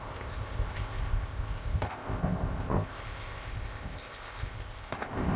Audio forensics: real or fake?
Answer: fake